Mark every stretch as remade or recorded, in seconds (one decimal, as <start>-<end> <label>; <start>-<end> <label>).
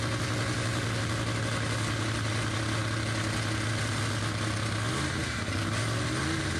0.0-6.6 recorded